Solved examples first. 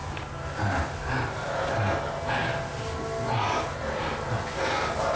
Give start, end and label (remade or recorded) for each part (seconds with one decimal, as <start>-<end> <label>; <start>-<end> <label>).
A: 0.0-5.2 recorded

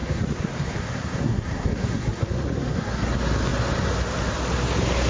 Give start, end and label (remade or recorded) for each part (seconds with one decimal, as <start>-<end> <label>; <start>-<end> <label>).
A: 0.0-3.1 remade; 3.1-5.1 recorded

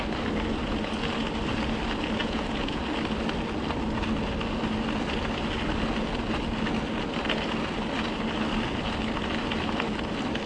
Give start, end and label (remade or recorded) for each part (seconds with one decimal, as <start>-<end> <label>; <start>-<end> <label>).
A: 0.0-2.2 recorded; 2.2-2.8 remade; 2.8-10.5 recorded

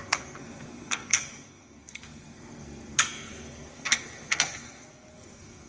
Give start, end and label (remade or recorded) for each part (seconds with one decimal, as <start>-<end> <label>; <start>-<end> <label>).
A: 0.0-5.7 remade

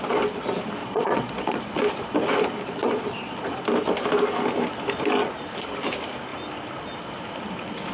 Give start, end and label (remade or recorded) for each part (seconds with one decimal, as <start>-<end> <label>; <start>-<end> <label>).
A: 0.0-0.8 recorded; 0.8-1.6 remade; 1.6-2.8 recorded; 2.8-3.5 remade; 3.5-7.9 recorded

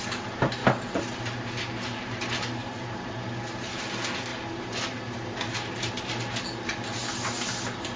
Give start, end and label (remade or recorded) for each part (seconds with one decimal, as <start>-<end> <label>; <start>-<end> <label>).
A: 0.0-8.0 recorded

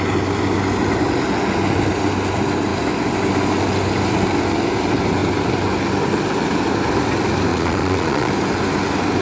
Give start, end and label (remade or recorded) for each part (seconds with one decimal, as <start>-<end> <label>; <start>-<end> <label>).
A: 0.0-7.5 recorded; 7.5-8.3 remade; 8.3-9.2 recorded